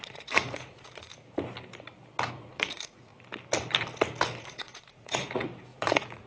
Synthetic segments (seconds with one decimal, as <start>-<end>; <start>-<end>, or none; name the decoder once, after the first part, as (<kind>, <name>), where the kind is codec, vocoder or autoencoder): 0.0-1.1 (vocoder, Vocos); 2.3-3.1; 4.4-6.3